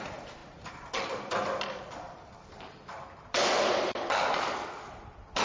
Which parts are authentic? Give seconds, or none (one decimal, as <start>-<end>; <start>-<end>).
none